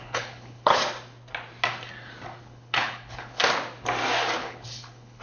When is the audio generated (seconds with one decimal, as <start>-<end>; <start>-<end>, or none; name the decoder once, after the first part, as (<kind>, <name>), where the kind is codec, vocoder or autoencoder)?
0.0-0.8 (codec, HILCodec); 2.4-3.4; 4.4-5.2